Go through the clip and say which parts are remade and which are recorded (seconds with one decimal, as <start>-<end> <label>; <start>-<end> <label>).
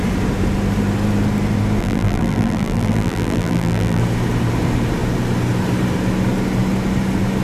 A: 0.0-1.8 recorded; 1.8-4.0 remade; 4.0-7.4 recorded